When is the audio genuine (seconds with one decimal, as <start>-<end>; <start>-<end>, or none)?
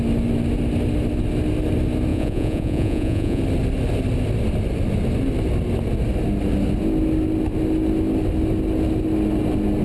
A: 0.0-2.1; 3.4-9.8